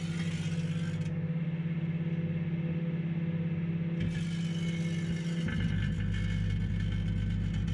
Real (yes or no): yes